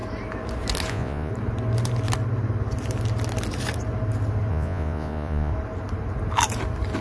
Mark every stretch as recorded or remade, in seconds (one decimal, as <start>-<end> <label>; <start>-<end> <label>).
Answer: 0.0-0.9 recorded; 0.9-1.3 remade; 1.3-4.5 recorded; 4.5-5.5 remade; 5.5-7.0 recorded